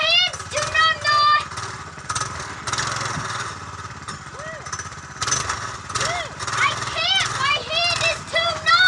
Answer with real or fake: fake